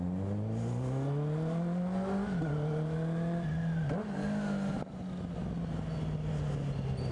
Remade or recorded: recorded